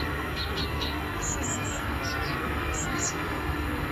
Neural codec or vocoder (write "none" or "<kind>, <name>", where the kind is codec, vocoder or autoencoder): codec, SNAC